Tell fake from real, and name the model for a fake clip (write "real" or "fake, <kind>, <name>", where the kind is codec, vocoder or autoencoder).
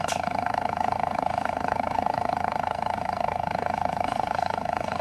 fake, codec, SNAC